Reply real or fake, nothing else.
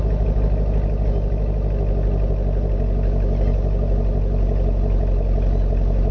real